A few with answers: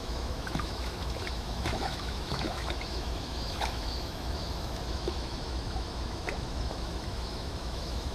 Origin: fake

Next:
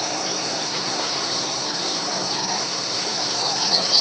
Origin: fake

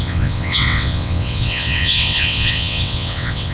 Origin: fake